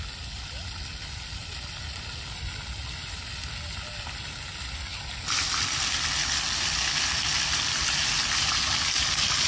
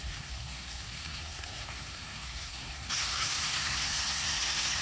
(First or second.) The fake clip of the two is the second